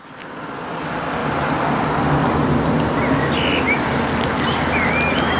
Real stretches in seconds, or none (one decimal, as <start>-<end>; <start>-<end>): 0.0-5.4